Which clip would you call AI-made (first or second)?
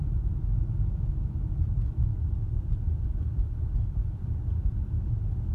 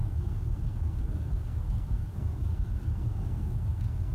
second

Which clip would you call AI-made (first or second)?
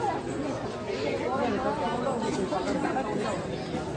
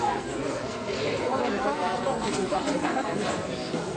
second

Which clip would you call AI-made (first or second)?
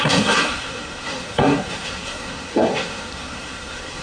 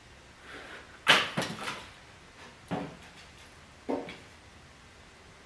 first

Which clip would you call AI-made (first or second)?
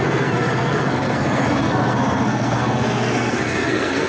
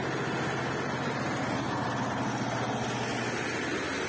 first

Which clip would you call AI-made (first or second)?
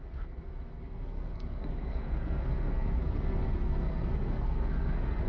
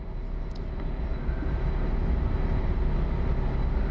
first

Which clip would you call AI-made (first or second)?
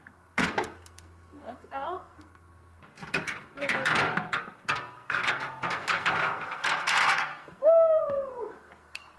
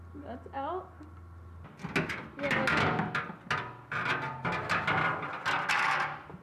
first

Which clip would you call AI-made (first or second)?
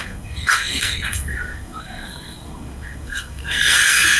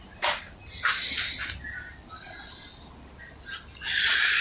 first